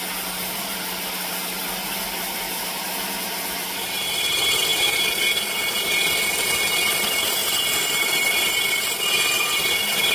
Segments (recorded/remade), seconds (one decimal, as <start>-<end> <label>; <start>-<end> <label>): 0.0-10.1 recorded